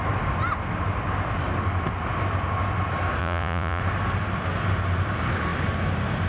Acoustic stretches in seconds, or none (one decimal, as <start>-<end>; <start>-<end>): 0.0-3.2; 3.8-6.3